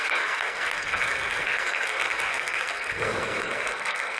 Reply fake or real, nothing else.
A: fake